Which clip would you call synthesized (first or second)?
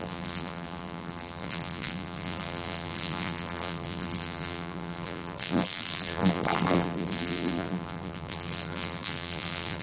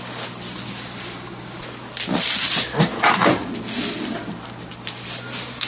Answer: first